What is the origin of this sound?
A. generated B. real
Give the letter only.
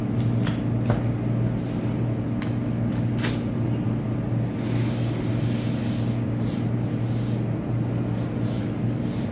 B